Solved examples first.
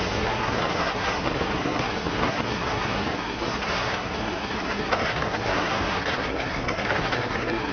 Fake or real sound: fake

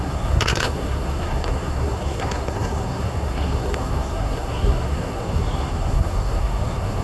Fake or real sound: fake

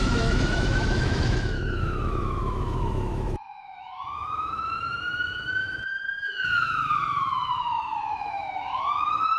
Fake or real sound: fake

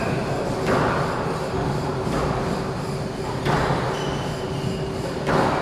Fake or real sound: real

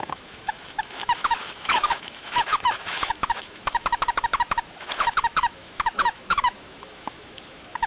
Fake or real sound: fake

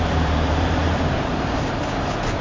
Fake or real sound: fake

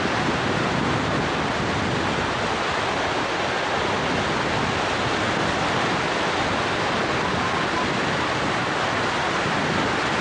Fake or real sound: real